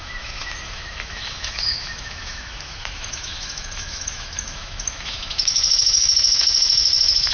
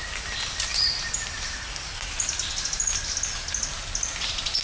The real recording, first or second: second